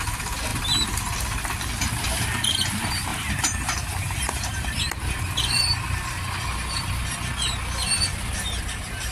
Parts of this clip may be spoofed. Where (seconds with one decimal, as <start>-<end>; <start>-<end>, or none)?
3.1-4.8